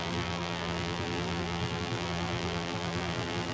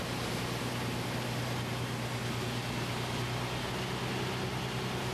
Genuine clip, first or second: second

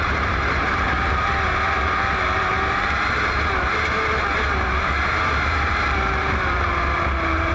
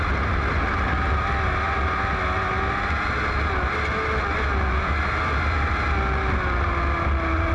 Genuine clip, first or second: second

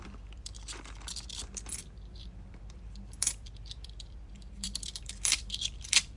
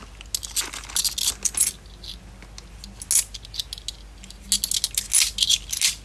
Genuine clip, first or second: second